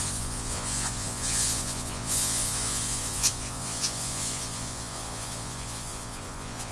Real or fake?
fake